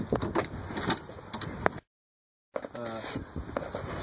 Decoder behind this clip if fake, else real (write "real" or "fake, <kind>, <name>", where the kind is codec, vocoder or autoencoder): real